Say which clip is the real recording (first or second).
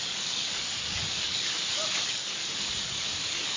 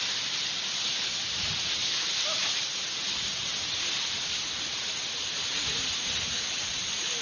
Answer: second